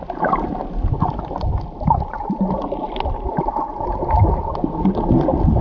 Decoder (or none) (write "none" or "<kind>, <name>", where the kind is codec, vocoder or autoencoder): none